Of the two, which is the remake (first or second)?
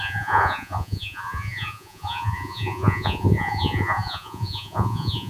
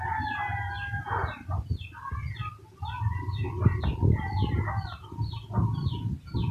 first